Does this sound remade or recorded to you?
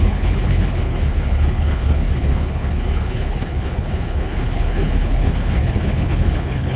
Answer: remade